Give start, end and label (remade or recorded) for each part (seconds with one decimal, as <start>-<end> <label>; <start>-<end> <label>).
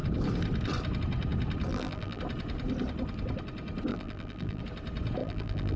0.0-1.7 recorded; 1.7-2.2 remade; 2.2-3.9 recorded; 3.9-4.6 remade; 4.6-5.2 recorded; 5.2-5.8 remade